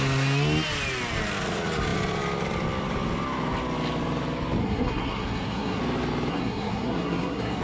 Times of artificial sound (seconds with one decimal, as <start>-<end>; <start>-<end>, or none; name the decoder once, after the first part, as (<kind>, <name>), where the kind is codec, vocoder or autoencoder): 4.6-5.8 (codec, SNAC); 6.3-7.6